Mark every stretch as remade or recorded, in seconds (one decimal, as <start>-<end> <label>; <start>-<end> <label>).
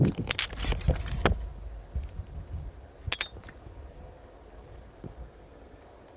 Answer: 0.0-5.2 recorded; 5.2-5.8 remade; 5.8-6.2 recorded